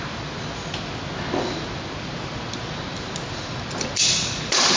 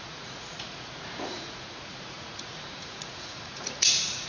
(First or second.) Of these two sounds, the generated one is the second